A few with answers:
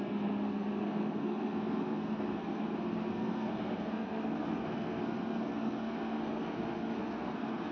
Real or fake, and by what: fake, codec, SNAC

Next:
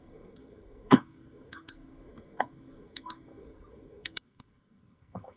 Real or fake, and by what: fake, codec, SNAC